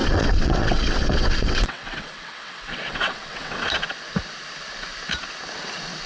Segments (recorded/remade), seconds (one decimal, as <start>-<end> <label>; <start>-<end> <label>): 0.0-3.7 remade; 3.7-6.1 recorded